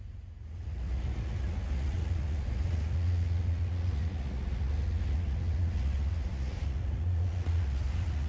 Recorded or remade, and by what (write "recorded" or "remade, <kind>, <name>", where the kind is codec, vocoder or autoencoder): remade, vocoder, Vocos